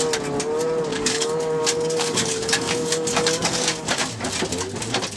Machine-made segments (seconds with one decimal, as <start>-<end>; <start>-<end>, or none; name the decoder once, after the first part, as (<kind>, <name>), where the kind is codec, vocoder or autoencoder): 0.9-4.0 (codec, DAC)